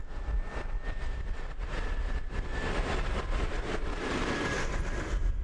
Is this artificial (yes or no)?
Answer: no